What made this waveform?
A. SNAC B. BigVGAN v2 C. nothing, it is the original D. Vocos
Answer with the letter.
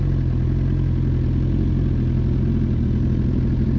C